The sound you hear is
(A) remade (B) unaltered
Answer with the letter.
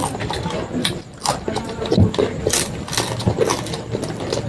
B